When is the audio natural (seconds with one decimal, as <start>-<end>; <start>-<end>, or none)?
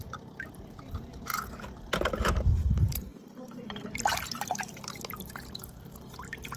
1.3-2.5